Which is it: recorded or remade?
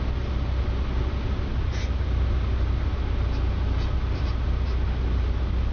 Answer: recorded